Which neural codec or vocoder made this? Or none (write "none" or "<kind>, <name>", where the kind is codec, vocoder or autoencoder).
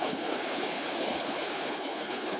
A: codec, HILCodec